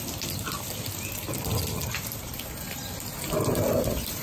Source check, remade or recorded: recorded